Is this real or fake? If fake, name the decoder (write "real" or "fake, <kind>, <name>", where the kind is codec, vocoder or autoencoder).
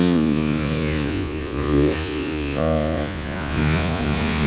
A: fake, vocoder, Vocos